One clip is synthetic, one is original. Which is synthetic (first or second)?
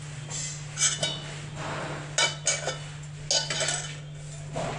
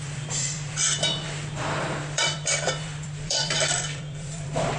second